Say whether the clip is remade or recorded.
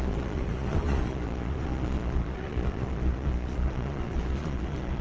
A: remade